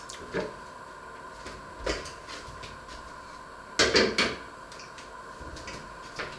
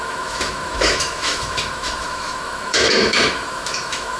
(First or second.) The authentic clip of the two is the first